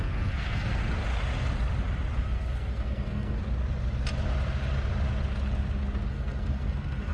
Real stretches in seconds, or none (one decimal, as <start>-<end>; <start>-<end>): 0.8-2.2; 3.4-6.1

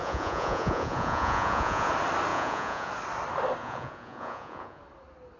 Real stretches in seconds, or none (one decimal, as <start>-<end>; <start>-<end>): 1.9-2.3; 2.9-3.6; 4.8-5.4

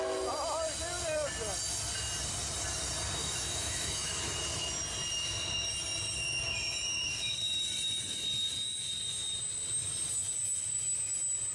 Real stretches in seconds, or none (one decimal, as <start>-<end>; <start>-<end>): 0.0-3.2; 4.2-11.5

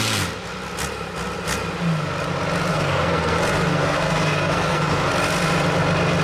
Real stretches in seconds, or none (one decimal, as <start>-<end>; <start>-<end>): 0.0-2.7; 5.1-6.2

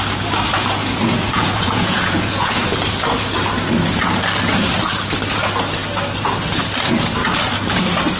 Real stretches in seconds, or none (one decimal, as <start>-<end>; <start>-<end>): 0.0-0.8; 2.7-8.2